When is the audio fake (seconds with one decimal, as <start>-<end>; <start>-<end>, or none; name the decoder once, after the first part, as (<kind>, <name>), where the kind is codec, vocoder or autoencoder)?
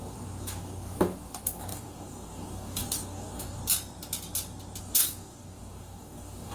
0.0-3.6 (codec, DAC); 4.8-6.5